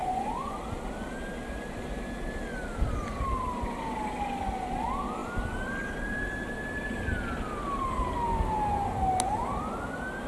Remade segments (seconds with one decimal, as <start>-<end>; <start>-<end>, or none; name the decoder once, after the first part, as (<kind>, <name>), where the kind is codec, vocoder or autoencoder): 0.0-0.6 (vocoder, Vocos)